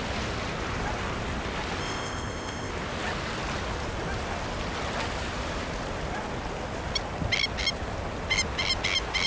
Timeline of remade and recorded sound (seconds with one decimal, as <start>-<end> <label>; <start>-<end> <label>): 0.0-1.8 recorded; 1.8-2.7 remade; 2.7-9.3 recorded